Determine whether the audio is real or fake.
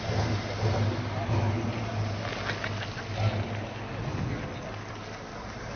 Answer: real